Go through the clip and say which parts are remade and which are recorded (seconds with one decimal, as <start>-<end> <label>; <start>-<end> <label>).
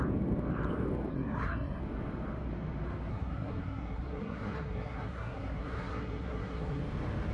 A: 0.0-1.1 recorded; 1.1-1.8 remade; 1.8-3.1 recorded; 3.1-6.8 remade; 6.8-7.3 recorded